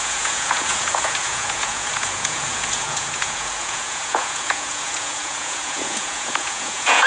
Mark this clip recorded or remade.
remade